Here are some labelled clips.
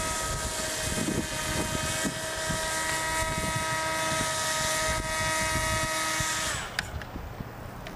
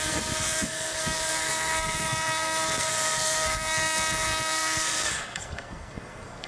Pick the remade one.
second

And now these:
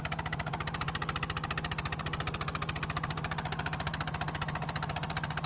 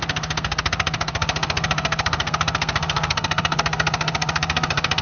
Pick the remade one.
second